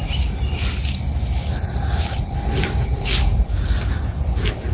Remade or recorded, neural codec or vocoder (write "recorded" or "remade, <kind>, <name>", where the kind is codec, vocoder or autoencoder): recorded